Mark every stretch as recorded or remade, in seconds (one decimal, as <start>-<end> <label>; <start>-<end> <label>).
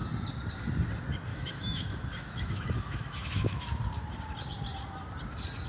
0.0-1.3 recorded; 1.3-3.7 remade; 3.7-5.7 recorded